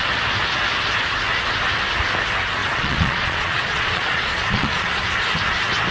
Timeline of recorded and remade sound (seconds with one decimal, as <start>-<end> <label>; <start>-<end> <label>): 0.0-2.6 recorded; 2.6-5.1 remade; 5.1-5.9 recorded